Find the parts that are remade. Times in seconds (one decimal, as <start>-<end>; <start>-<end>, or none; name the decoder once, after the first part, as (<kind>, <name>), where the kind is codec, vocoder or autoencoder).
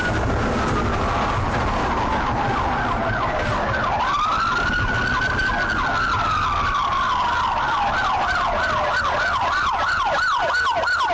none